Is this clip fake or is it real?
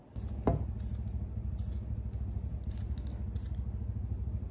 real